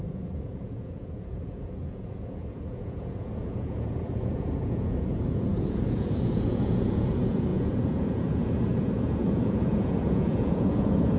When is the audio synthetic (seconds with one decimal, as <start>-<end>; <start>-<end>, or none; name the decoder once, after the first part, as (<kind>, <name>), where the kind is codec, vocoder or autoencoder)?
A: 0.0-11.2 (vocoder, Vocos)